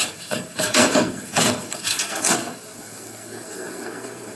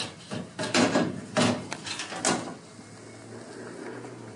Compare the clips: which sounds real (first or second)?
second